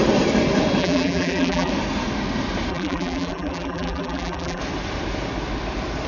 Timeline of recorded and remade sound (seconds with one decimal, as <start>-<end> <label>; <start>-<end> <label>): 0.0-0.8 recorded; 0.8-1.7 remade; 1.7-2.7 recorded; 2.7-4.6 remade; 4.6-6.1 recorded